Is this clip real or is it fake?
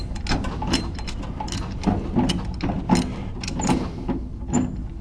real